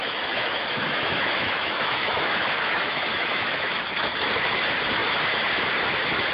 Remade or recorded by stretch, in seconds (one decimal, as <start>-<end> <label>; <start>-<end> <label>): 0.0-3.8 remade; 3.8-6.3 recorded